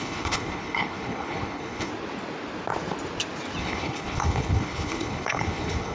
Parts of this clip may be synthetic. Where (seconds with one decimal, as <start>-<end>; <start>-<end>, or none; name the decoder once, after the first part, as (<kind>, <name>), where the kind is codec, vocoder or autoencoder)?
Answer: 0.0-1.9 (codec, HILCodec); 3.6-5.9